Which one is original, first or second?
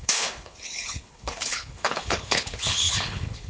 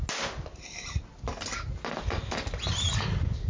second